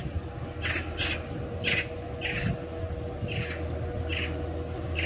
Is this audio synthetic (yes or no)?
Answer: no